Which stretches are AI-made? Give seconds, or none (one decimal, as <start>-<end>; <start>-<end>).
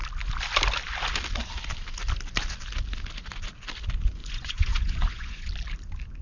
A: 4.2-5.5